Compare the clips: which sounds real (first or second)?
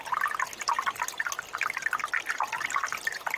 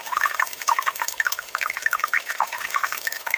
first